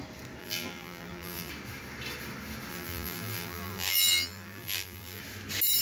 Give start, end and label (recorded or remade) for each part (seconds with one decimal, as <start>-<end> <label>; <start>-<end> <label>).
0.0-0.4 recorded; 0.4-1.5 remade; 1.5-2.7 recorded; 2.7-5.2 remade; 5.2-5.8 recorded